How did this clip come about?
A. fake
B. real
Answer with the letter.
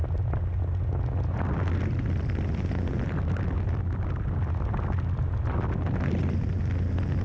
B